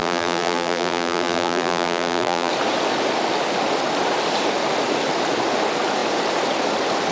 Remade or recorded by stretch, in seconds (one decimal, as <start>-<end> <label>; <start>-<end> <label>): 0.0-2.5 remade; 2.5-7.1 recorded